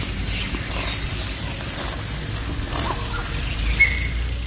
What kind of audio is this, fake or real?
real